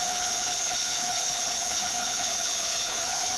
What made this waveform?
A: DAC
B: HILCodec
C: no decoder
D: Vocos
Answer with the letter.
B